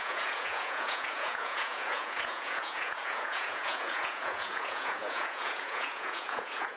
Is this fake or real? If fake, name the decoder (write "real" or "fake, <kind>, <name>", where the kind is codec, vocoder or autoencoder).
fake, vocoder, Vocos